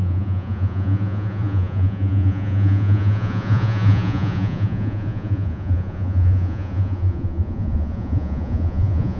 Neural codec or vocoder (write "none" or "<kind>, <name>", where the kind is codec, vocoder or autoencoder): vocoder, Vocos